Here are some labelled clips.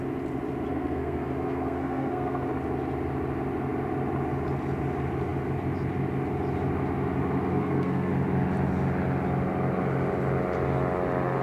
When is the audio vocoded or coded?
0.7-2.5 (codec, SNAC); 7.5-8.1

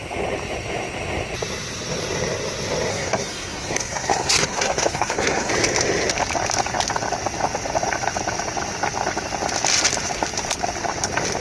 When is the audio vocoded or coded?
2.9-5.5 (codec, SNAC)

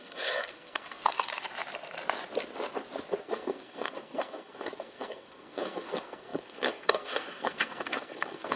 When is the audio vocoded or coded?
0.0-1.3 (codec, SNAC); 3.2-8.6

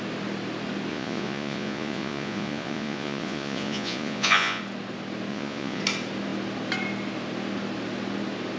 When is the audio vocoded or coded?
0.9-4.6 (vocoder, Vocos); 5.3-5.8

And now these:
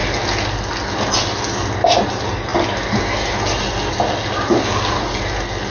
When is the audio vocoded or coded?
none